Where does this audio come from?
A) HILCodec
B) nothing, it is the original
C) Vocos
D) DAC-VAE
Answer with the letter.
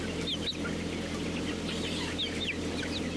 B